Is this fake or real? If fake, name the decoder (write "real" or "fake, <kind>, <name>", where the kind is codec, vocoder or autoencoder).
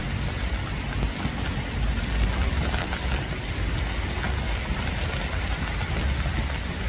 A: real